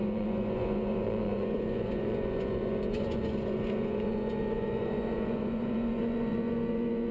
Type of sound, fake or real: fake